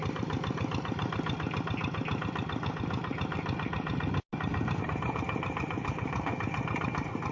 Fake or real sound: real